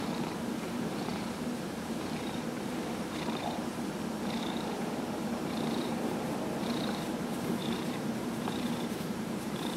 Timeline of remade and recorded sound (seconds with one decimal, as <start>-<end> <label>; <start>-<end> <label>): 0.0-3.7 remade; 3.7-4.4 recorded; 4.4-9.8 remade